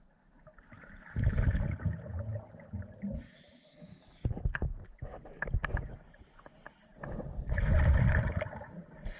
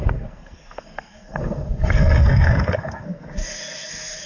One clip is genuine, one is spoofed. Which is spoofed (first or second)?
second